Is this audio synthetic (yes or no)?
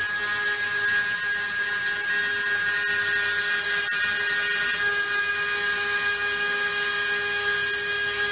no